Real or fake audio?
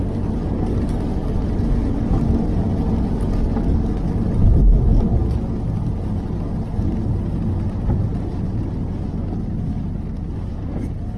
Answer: real